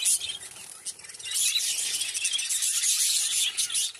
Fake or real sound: real